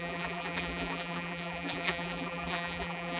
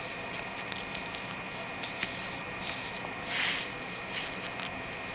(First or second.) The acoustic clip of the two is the second